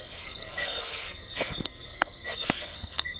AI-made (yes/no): yes